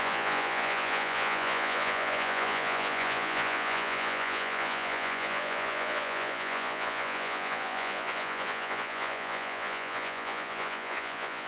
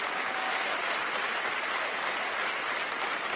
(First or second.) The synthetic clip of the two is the first